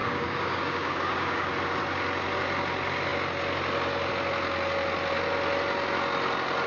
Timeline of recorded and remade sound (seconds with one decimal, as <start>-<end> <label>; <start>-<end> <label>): 0.0-1.5 remade; 1.5-6.7 recorded